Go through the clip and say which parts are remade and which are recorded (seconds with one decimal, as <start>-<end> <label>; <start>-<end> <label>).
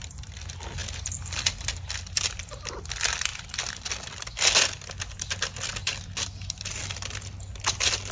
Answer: 0.0-3.3 recorded; 3.3-3.9 remade; 3.9-5.8 recorded; 5.8-7.1 remade; 7.1-8.1 recorded